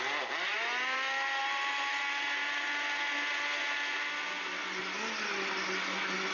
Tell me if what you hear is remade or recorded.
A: recorded